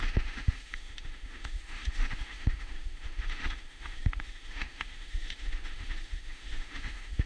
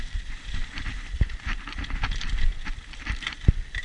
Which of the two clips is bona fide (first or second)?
second